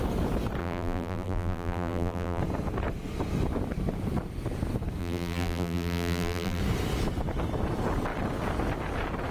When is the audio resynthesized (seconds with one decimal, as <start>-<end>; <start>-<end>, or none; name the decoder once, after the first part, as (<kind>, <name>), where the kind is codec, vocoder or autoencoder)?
0.6-2.4 (vocoder, BigVGAN v2); 5.0-6.6